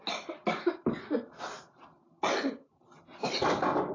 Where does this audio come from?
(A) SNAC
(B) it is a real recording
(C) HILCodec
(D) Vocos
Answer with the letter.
B